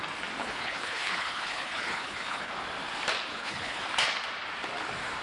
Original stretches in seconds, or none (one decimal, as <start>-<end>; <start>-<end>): 0.0-0.4; 2.5-3.3; 3.8-5.2

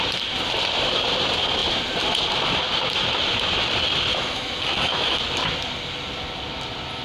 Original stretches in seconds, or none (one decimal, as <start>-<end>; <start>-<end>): 0.0-4.1; 5.2-7.0

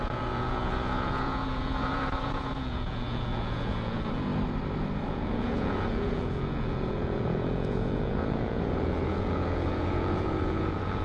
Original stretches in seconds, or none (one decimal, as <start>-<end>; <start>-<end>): 4.3-5.1

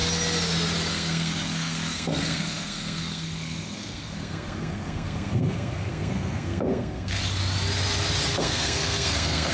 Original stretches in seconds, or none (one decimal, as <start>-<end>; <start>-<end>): 0.0-0.9; 7.2-8.4

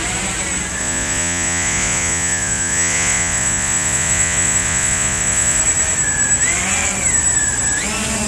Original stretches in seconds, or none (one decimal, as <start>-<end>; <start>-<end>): 0.0-0.8; 5.6-8.3

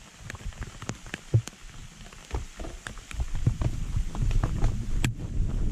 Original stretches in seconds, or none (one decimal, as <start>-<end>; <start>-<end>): 0.0-5.7

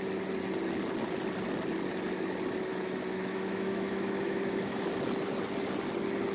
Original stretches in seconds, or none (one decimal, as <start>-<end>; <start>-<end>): 0.0-2.7; 4.9-6.3

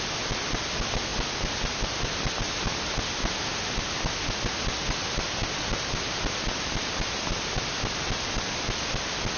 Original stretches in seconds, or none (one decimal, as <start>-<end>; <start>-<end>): 0.0-9.4